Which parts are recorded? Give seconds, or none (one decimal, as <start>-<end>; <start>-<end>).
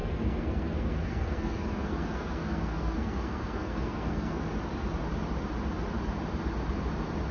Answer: 4.4-7.3